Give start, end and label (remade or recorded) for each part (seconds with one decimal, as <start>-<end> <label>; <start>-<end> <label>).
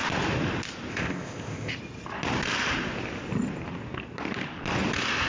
0.0-0.9 recorded; 0.9-1.7 remade; 1.7-5.3 recorded